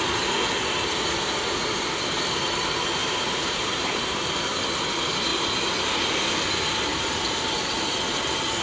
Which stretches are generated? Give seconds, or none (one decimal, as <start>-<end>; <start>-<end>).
3.0-4.3; 6.9-7.5